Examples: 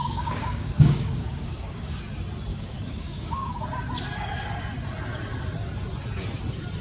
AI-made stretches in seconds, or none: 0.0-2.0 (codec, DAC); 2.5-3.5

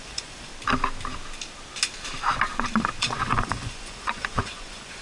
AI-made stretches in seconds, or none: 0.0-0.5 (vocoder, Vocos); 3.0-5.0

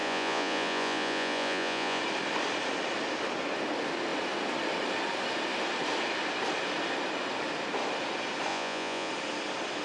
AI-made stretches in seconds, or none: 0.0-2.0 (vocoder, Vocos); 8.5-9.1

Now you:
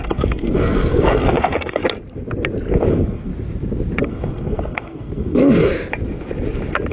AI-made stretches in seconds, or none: 0.0-1.8 (codec, SNAC); 2.9-3.3; 4.0-5.7

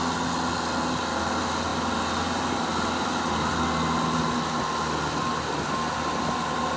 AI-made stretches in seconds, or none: none